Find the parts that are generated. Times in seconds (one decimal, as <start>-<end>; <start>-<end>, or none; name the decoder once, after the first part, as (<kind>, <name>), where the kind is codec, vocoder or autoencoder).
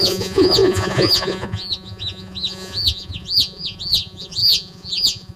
0.0-5.4 (vocoder, Vocos)